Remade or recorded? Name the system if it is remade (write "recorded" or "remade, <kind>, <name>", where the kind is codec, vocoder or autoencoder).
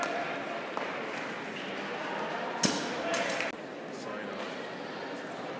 recorded